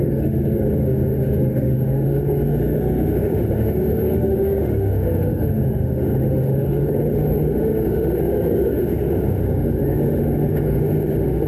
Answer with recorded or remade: remade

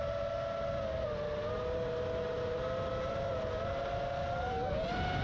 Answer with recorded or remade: recorded